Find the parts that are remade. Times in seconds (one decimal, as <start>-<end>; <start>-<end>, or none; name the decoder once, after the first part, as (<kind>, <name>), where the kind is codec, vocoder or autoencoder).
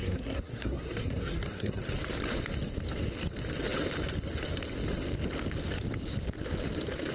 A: 0.0-1.8 (codec, SNAC)